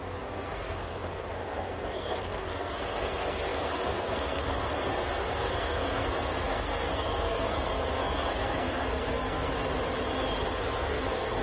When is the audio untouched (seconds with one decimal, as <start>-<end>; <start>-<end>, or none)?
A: 9.5-10.4